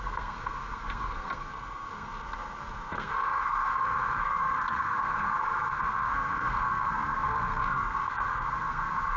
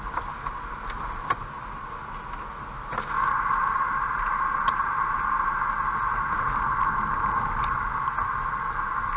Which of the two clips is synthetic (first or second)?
first